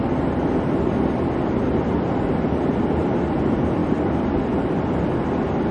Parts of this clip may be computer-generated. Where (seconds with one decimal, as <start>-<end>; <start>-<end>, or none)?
2.7-5.7